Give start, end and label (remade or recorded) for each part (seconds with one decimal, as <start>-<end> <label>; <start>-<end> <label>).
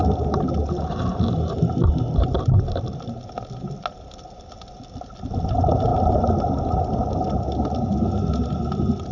0.0-9.1 recorded